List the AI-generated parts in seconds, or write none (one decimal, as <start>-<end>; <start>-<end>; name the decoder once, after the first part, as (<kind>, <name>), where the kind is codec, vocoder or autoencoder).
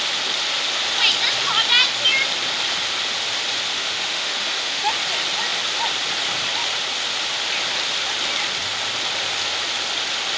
3.7-4.9 (autoencoder, DAC-VAE)